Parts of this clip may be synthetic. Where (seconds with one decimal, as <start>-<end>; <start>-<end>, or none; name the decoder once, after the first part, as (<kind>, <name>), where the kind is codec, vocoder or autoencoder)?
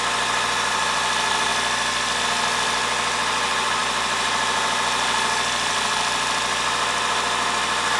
none